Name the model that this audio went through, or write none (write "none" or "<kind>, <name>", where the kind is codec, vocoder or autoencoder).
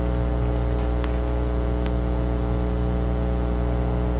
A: none